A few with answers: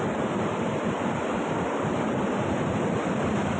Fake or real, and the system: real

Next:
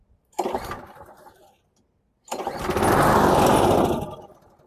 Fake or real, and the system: real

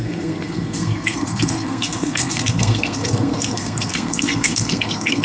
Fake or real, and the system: fake, codec, SNAC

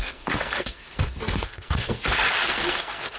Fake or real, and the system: fake, codec, SNAC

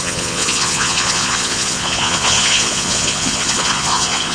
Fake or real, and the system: fake, vocoder, Vocos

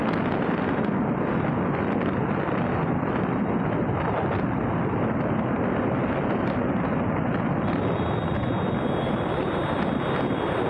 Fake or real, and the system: real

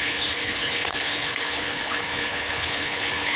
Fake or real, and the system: fake, codec, HILCodec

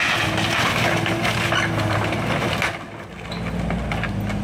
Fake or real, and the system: real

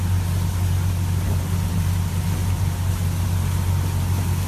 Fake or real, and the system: real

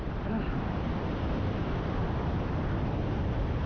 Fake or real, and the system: real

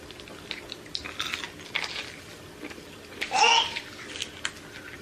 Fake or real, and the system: real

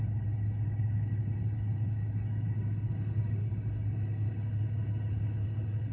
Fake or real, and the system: fake, codec, HILCodec